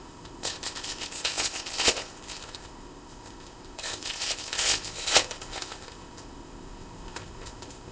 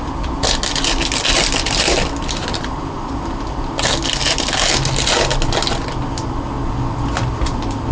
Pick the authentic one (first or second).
second